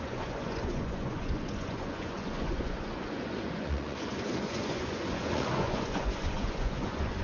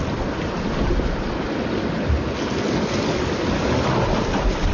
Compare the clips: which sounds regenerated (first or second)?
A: first